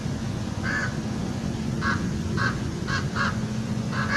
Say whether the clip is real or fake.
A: fake